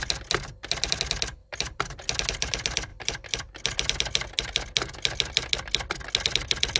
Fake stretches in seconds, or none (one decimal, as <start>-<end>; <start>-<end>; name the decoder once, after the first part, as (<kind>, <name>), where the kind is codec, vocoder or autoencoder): 1.4-2.0 (vocoder, BigVGAN v2)